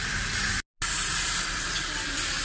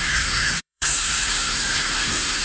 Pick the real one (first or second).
first